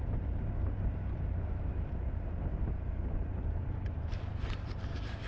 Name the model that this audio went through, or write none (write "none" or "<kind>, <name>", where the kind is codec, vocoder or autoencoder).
vocoder, BigVGAN v2